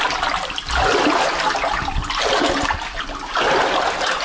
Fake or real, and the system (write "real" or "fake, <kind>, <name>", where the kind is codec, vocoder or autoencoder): real